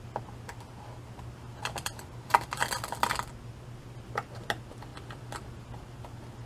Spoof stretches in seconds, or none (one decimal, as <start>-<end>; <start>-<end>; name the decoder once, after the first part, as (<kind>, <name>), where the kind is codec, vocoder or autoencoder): 1.6-2.6 (vocoder, BigVGAN v2)